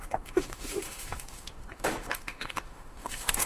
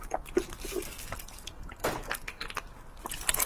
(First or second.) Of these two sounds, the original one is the second